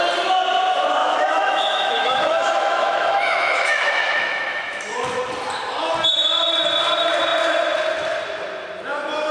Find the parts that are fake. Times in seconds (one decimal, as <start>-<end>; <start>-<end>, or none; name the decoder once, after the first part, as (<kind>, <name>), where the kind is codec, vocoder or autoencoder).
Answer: 1.0-5.2 (autoencoder, DAC-VAE)